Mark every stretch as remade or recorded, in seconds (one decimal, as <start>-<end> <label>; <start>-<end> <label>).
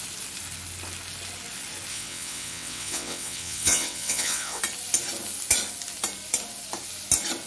0.0-1.9 recorded; 1.9-4.6 remade; 4.6-7.5 recorded